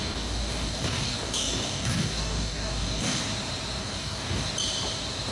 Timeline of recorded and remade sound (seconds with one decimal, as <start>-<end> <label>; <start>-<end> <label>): 0.0-3.2 remade; 3.2-3.8 recorded; 3.8-4.5 remade; 4.5-5.3 recorded